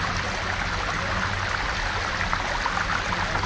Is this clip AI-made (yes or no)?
no